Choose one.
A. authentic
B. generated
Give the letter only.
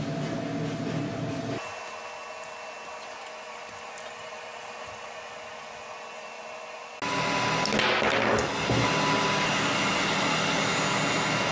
A